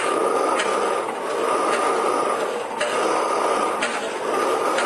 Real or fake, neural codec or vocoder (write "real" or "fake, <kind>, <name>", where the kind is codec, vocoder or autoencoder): real